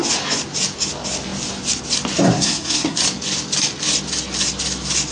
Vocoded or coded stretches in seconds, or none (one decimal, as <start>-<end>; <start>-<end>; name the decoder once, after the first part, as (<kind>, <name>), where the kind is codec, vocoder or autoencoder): 2.3-3.0 (codec, SNAC)